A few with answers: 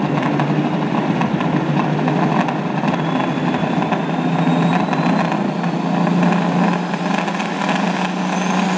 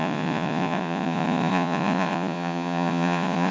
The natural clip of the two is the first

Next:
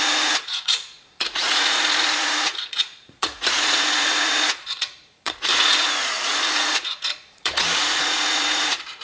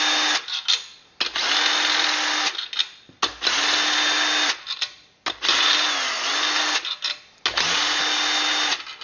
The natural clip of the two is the second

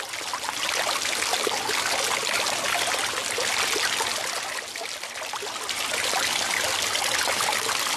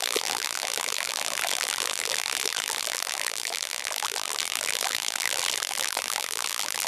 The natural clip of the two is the first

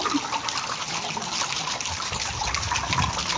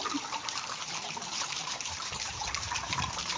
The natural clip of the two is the first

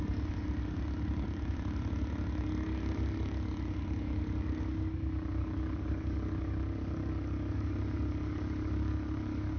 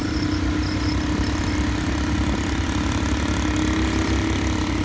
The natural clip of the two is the second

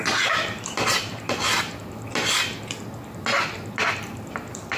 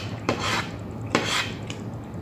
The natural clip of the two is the first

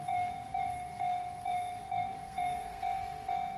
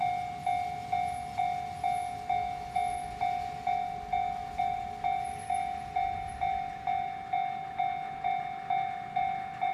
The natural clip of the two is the second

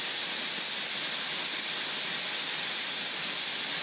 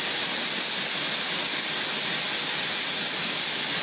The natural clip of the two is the second